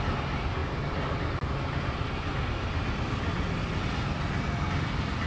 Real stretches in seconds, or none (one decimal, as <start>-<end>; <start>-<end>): 0.0-5.3